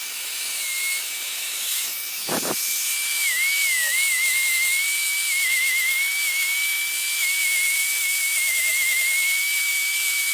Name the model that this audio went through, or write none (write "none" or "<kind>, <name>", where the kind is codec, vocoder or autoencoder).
autoencoder, DAC-VAE